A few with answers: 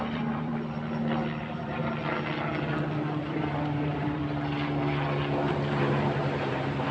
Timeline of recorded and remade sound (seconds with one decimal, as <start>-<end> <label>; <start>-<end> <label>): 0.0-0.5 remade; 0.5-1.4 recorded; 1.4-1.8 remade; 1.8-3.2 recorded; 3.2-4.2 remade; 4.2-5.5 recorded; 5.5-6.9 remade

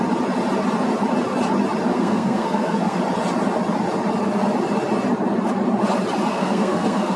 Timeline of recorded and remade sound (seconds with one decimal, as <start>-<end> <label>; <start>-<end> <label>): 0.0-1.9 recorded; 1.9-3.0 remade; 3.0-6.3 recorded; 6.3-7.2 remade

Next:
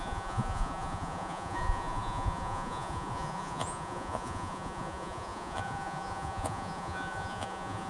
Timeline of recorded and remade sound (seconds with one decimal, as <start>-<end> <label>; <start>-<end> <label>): 0.0-7.9 remade